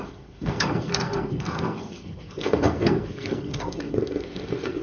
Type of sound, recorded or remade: remade